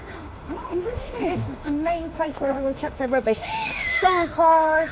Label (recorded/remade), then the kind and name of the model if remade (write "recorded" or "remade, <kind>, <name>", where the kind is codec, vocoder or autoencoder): remade, autoencoder, DAC-VAE